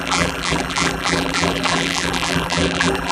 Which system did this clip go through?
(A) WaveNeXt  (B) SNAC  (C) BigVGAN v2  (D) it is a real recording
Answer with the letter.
C